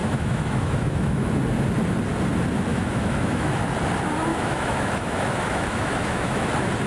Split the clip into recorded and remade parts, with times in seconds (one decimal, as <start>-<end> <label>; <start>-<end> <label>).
0.0-1.4 remade; 1.4-2.7 recorded; 2.7-3.6 remade; 3.6-4.3 recorded; 4.3-6.5 remade; 6.5-6.9 recorded